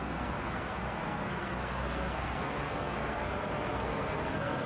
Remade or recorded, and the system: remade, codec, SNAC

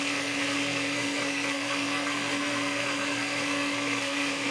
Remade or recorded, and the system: remade, codec, SNAC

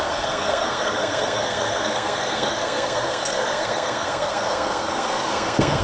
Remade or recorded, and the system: remade, codec, SNAC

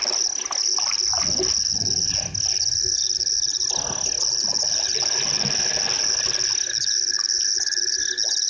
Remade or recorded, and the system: recorded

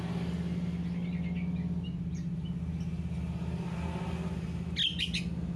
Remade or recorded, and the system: recorded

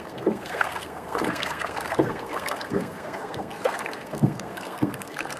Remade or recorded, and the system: remade, codec, SNAC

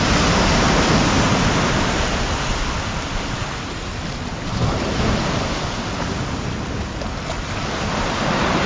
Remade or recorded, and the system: recorded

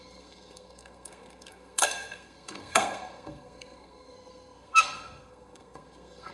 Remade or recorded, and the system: remade, codec, SNAC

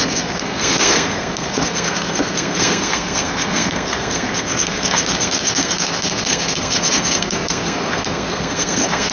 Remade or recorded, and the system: remade, codec, SNAC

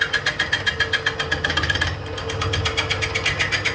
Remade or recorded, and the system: recorded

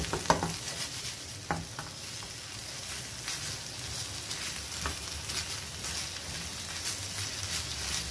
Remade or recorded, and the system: recorded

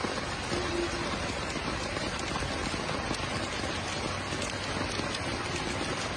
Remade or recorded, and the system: recorded